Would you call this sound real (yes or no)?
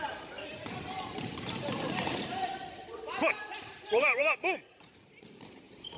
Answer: no